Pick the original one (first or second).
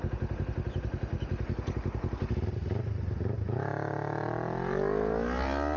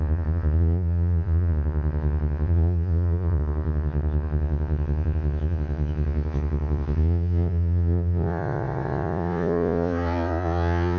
first